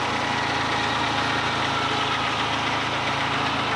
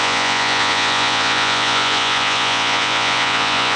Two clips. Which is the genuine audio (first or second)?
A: first